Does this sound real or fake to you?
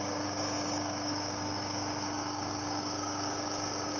fake